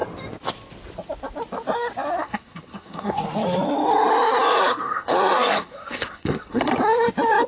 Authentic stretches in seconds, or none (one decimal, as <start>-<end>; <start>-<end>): 0.0-2.2; 3.2-4.6; 6.7-7.5